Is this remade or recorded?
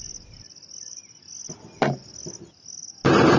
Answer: recorded